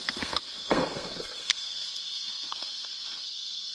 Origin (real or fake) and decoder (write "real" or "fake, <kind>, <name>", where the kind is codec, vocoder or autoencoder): fake, codec, SNAC